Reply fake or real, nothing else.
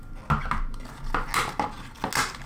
real